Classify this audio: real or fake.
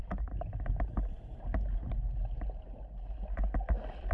real